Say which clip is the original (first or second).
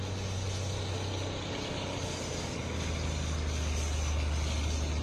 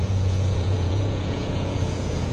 first